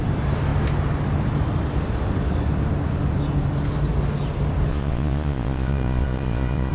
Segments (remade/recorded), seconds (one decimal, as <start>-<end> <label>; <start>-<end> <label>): 0.0-4.7 recorded; 4.7-6.7 remade